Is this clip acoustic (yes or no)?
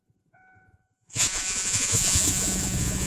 no